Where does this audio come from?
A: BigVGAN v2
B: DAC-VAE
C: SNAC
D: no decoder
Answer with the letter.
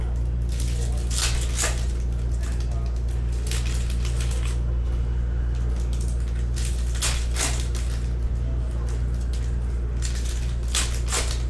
D